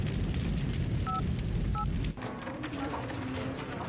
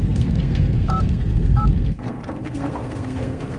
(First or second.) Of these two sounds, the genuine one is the first